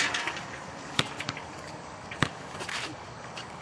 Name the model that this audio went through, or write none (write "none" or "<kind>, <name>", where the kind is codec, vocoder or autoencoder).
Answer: codec, DAC